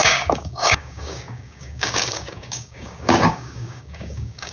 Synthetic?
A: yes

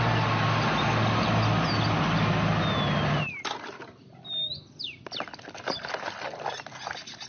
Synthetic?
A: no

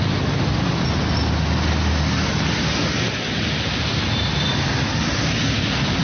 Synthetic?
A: no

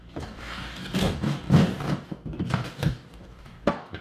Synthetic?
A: yes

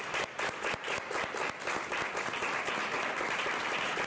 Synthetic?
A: no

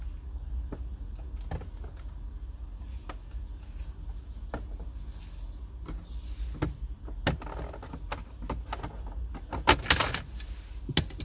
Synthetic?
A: no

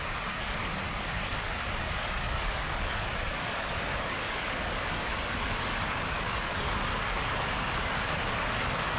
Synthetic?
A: yes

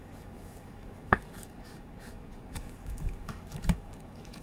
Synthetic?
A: yes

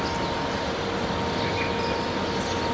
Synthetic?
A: no